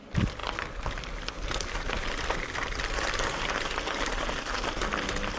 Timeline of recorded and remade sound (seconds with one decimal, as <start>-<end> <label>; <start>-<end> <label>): 0.0-5.4 recorded